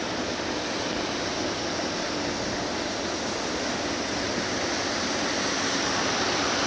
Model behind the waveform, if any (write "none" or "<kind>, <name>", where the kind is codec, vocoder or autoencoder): none